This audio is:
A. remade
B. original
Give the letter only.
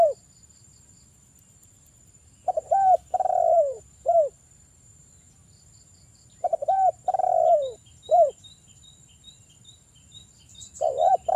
A